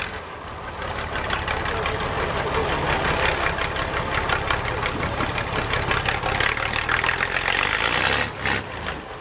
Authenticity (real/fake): real